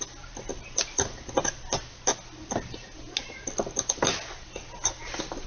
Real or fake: real